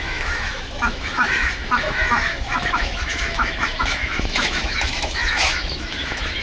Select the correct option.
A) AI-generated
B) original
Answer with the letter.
A